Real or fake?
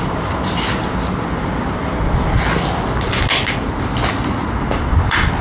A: real